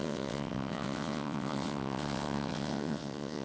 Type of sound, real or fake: fake